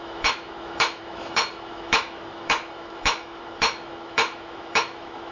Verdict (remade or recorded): remade